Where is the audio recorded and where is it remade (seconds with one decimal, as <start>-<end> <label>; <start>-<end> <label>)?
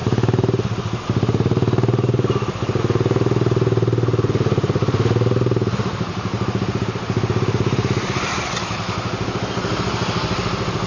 0.0-2.8 remade; 2.8-4.8 recorded; 4.8-9.0 remade; 9.0-10.9 recorded